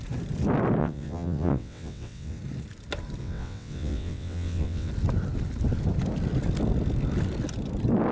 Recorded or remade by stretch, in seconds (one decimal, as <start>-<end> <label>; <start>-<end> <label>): 0.0-0.8 recorded; 0.8-2.4 remade; 2.4-3.2 recorded; 3.2-4.9 remade; 4.9-8.1 recorded